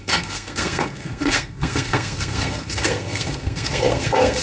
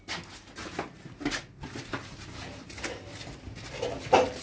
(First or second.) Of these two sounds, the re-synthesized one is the first